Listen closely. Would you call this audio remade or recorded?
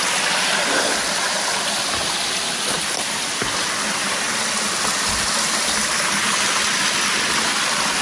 recorded